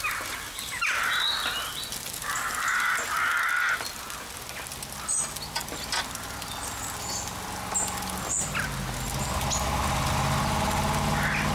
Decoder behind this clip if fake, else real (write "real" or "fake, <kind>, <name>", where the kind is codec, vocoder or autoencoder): real